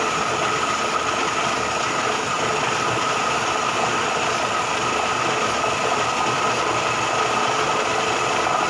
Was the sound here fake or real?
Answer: real